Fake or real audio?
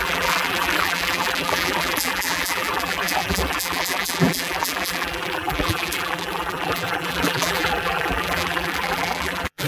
fake